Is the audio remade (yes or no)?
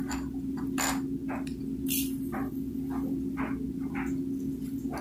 no